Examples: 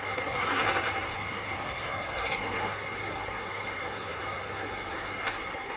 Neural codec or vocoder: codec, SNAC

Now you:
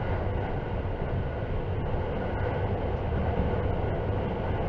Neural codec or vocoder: none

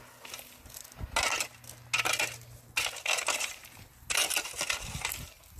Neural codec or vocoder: none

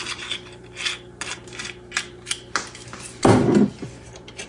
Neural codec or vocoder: none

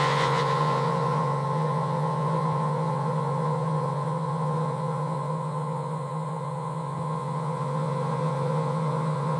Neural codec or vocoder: vocoder, Vocos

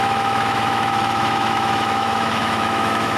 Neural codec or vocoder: autoencoder, DAC-VAE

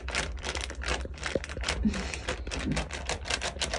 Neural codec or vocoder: vocoder, BigVGAN v2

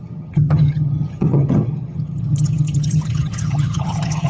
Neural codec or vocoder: vocoder, HiFi-GAN